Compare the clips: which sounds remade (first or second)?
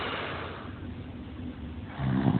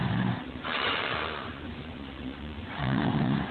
second